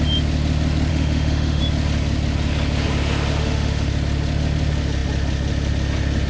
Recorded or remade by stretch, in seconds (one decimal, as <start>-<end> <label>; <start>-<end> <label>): 0.0-0.9 recorded; 0.9-1.6 remade; 1.6-3.4 recorded; 3.4-3.9 remade; 3.9-6.3 recorded

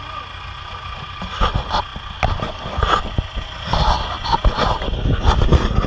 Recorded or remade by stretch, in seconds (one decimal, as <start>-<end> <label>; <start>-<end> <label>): 0.0-5.9 recorded

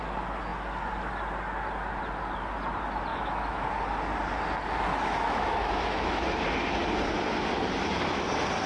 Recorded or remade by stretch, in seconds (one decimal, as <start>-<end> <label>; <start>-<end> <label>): 0.0-3.1 recorded; 3.1-3.7 remade; 3.7-4.9 recorded; 4.9-6.2 remade; 6.2-8.7 recorded

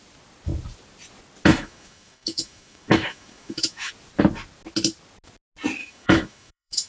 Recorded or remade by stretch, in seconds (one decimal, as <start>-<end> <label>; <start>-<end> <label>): 0.0-1.5 recorded; 1.5-3.9 remade; 3.9-5.8 recorded; 5.8-6.9 remade

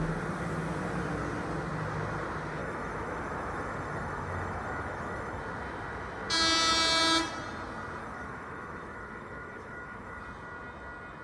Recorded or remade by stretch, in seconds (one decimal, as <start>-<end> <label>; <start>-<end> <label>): 0.0-2.6 recorded; 2.6-5.4 remade; 5.4-8.0 recorded; 8.0-10.2 remade; 10.2-11.2 recorded

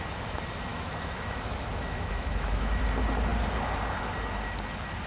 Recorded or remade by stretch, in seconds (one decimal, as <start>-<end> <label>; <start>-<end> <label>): 0.0-0.7 recorded; 0.7-2.8 remade; 2.8-5.1 recorded

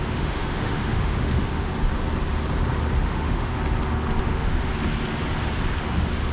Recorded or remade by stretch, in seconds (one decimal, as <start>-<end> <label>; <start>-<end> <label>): 0.0-1.7 remade; 1.7-3.0 recorded; 3.0-3.5 remade; 3.5-4.2 recorded; 4.2-4.7 remade; 4.7-5.8 recorded; 5.8-6.3 remade